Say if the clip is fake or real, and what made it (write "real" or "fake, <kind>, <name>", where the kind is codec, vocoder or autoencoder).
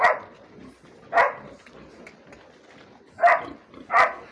real